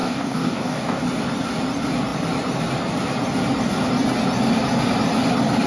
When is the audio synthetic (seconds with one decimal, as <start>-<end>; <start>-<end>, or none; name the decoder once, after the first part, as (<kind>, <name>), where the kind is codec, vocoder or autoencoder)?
0.0-1.0 (codec, DAC)